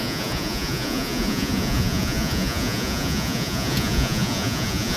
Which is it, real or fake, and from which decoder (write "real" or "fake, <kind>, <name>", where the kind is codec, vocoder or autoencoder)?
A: fake, vocoder, Vocos